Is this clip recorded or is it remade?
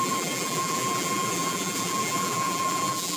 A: remade